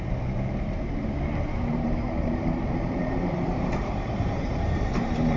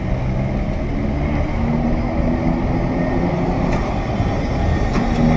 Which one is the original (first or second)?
second